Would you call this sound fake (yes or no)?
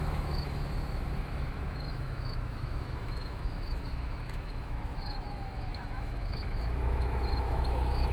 yes